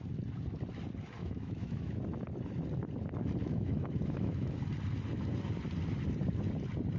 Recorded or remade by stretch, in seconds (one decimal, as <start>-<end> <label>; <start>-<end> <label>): 0.0-1.2 recorded; 1.2-2.0 remade; 2.0-3.4 recorded; 3.4-4.6 remade; 4.6-7.0 recorded